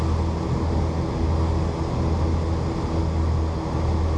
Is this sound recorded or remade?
recorded